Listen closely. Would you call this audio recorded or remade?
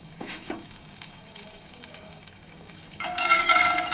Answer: remade